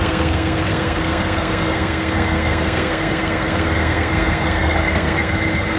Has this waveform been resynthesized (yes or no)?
yes